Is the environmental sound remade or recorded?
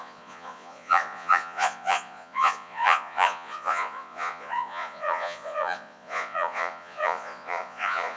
remade